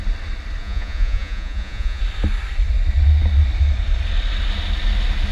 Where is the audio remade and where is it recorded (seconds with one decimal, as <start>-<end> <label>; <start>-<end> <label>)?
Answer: 0.0-0.6 recorded; 0.6-2.0 remade; 2.0-5.3 recorded